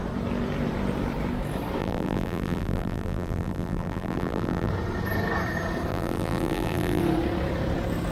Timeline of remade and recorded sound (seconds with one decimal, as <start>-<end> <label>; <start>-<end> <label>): 0.0-1.8 recorded; 1.8-4.7 remade; 4.7-5.9 recorded; 5.9-7.0 remade; 7.0-8.1 recorded